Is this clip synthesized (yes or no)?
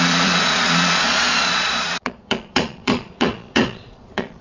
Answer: yes